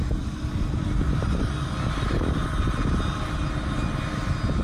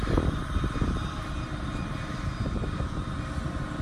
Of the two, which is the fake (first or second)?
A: second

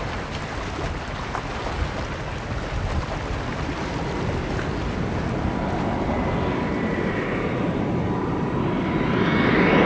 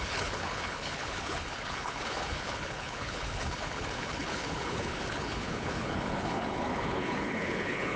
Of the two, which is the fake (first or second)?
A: second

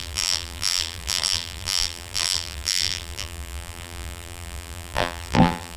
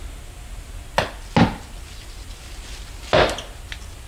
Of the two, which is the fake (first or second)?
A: first